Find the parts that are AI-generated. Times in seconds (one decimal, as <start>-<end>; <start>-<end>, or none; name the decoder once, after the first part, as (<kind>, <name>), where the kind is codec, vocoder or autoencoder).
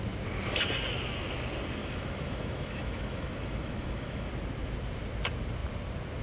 1.8-4.3 (autoencoder, DAC-VAE)